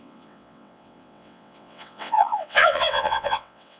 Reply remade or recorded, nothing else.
remade